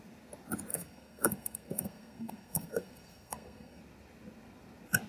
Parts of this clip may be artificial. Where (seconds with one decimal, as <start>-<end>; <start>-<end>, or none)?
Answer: 0.7-3.8